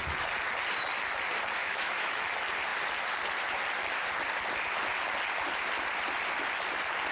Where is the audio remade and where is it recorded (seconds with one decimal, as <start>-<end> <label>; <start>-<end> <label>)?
0.0-1.6 recorded; 1.6-2.2 remade; 2.2-7.1 recorded